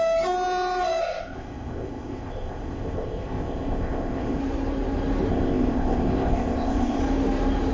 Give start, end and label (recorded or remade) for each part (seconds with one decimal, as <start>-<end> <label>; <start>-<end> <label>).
0.0-1.0 recorded; 1.0-4.4 remade; 4.4-5.3 recorded; 5.3-7.0 remade; 7.0-7.7 recorded